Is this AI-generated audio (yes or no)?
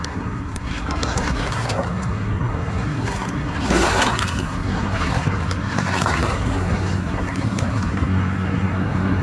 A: yes